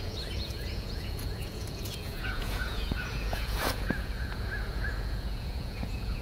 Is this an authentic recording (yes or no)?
no